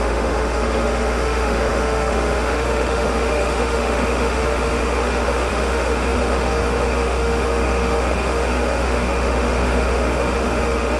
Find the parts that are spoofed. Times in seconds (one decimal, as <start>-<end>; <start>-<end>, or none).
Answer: 0.0-11.0